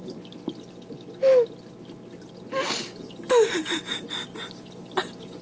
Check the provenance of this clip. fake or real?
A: real